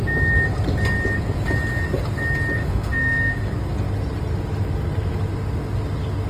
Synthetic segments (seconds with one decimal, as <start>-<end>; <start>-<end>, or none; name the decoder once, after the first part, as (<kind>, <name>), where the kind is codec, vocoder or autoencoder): 2.6-3.5 (autoencoder, DAC-VAE)